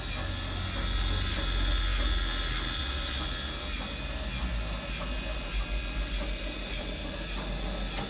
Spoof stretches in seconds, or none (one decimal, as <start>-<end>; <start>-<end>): none